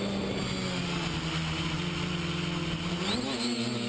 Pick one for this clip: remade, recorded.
recorded